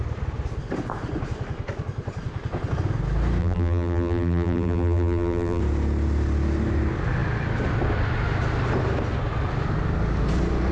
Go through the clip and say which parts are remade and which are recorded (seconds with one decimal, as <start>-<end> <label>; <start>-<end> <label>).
0.0-3.4 recorded; 3.4-5.6 remade; 5.6-10.7 recorded